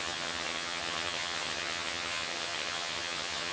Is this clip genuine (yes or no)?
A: no